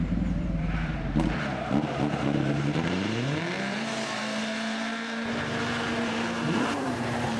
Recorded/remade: remade